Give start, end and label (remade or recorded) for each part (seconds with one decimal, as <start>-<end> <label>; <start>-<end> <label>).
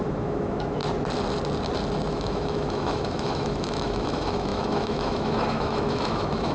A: 0.0-0.8 remade; 0.8-2.1 recorded; 2.1-6.5 remade